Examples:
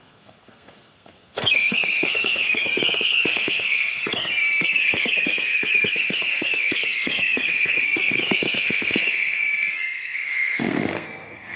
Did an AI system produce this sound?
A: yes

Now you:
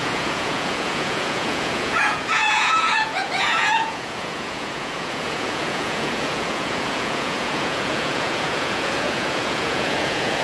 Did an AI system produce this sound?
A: yes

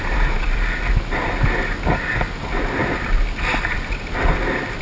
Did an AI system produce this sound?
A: no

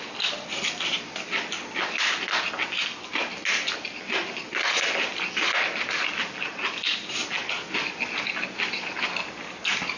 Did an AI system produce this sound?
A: no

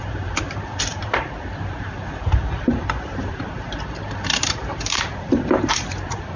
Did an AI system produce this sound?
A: yes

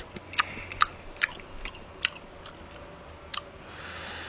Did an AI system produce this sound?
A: no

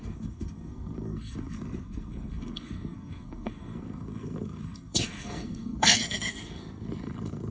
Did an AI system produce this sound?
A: yes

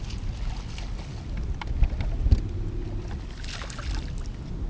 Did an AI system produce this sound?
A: no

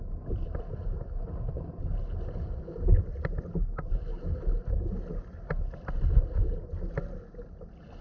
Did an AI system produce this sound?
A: no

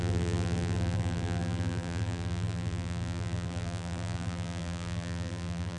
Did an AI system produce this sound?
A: yes